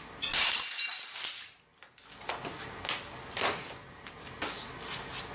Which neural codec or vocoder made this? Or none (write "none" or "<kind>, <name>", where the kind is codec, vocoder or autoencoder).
none